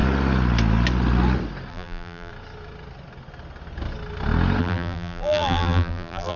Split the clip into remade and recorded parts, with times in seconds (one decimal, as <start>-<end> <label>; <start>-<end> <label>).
0.0-1.7 recorded; 1.7-2.3 remade; 2.3-4.6 recorded; 4.6-6.4 remade